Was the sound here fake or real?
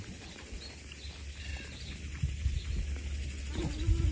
real